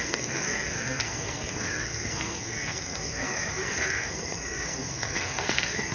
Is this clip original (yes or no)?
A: no